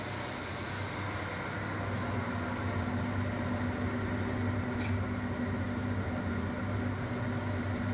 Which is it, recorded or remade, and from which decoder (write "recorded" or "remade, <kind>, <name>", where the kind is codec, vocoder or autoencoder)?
recorded